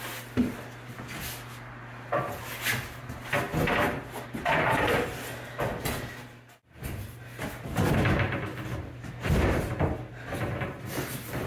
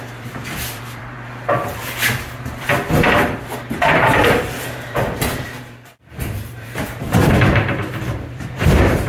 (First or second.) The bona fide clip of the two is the first